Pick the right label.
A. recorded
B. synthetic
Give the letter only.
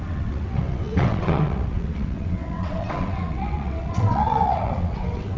B